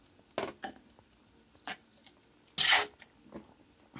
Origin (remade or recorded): recorded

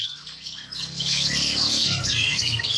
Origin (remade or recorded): remade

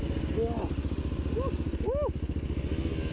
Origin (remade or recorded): recorded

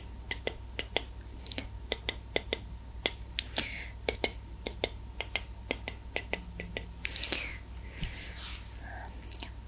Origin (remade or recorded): recorded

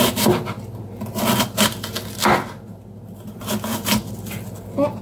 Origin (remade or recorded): recorded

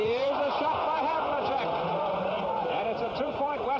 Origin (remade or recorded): remade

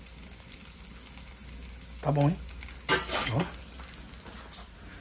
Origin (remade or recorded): recorded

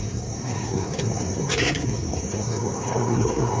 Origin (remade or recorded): remade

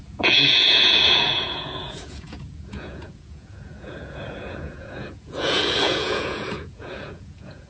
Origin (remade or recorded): remade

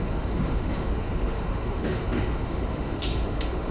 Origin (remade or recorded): remade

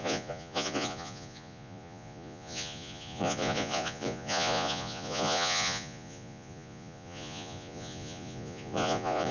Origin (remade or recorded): remade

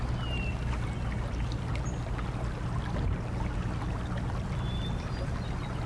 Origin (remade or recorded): recorded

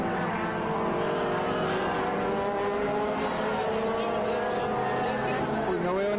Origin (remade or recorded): recorded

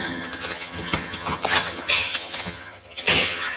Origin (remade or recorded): remade